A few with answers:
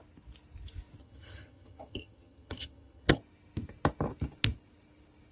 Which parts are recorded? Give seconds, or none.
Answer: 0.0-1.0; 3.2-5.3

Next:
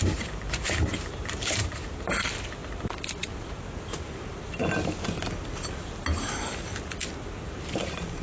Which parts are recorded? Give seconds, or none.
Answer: 1.6-3.4; 4.6-7.6

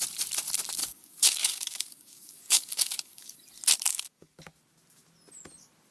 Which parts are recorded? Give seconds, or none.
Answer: 0.0-0.8; 3.4-3.9; 4.4-5.9